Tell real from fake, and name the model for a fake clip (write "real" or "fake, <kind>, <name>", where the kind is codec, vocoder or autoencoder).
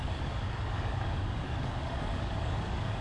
fake, codec, DAC